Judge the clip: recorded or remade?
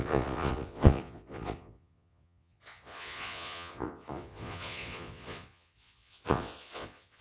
remade